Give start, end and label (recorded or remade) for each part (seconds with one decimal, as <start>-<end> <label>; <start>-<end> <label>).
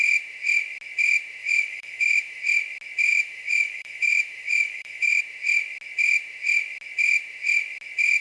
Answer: 0.0-1.4 recorded; 1.4-2.4 remade; 2.4-3.1 recorded; 3.1-5.2 remade; 5.2-8.2 recorded